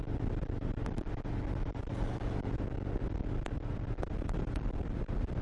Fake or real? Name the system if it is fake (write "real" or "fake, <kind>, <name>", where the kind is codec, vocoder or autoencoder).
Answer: real